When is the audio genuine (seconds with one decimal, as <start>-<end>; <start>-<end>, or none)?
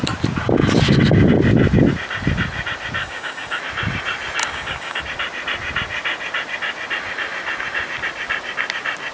0.0-3.0; 3.6-4.4; 5.0-9.1